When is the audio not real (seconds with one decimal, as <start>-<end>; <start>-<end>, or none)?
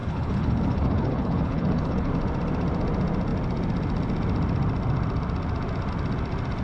0.0-2.1